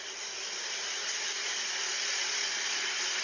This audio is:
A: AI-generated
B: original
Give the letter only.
B